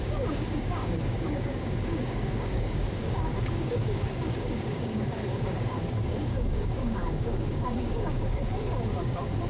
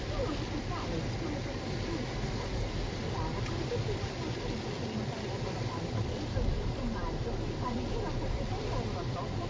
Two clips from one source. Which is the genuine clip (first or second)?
second